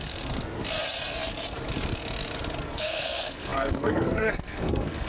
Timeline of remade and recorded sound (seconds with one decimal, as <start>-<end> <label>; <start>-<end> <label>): 0.0-0.6 remade; 0.6-2.6 recorded; 2.6-5.1 remade